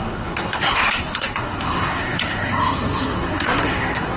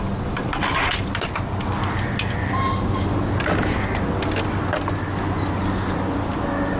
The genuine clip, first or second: second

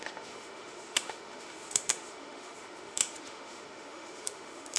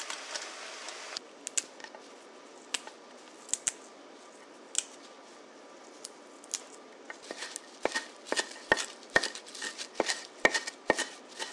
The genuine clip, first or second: second